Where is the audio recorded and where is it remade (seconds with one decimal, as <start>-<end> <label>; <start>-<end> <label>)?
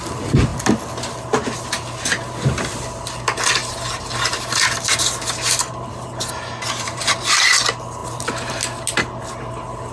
0.0-3.6 recorded; 3.6-7.1 remade; 7.1-9.9 recorded